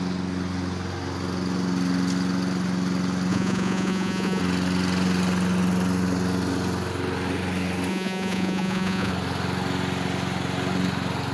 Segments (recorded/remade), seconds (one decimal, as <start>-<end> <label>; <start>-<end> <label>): 0.0-3.3 recorded; 3.3-4.4 remade; 4.4-7.9 recorded; 7.9-9.1 remade; 9.1-11.3 recorded